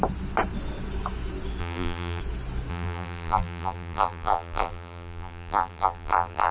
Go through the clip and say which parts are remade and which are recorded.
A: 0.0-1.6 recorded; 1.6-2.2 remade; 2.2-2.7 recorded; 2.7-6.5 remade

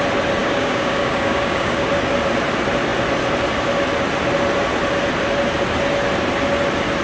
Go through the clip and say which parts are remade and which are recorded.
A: 0.0-0.4 recorded; 0.4-1.9 remade; 1.9-7.0 recorded